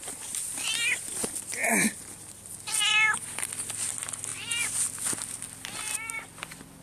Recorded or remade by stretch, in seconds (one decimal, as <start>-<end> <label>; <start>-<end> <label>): 0.0-6.8 recorded